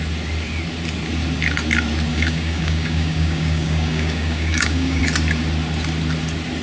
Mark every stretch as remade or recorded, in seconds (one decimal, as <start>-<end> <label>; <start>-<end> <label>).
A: 0.0-2.1 recorded; 2.1-5.0 remade; 5.0-6.6 recorded